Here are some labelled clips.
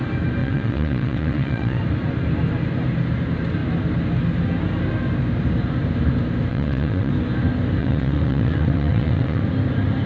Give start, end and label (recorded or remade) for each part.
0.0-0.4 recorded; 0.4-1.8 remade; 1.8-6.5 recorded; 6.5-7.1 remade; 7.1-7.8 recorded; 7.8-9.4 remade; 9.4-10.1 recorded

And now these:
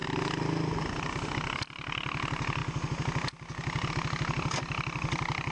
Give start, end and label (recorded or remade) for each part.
0.0-5.5 recorded

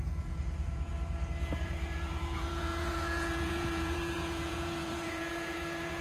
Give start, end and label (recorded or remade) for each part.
0.0-0.9 remade; 0.9-1.6 recorded; 1.6-6.0 remade

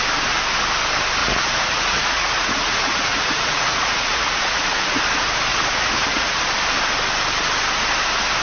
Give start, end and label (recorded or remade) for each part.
0.0-1.2 recorded; 1.2-5.0 remade; 5.0-5.5 recorded; 5.5-6.4 remade; 6.4-8.4 recorded

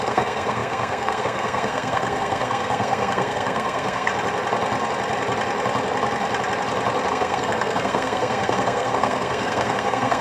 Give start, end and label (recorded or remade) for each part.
0.0-4.1 remade; 4.1-7.1 recorded; 7.1-10.2 remade

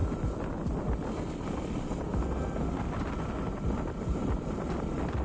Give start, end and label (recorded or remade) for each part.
0.0-1.3 recorded; 1.3-2.1 remade; 2.1-4.4 recorded; 4.4-5.2 remade

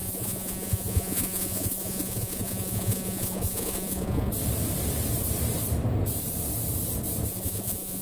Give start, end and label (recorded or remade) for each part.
0.0-4.3 remade; 4.3-7.3 recorded; 7.3-8.0 remade

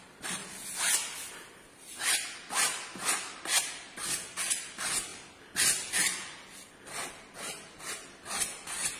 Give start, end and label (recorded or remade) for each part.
0.0-9.0 recorded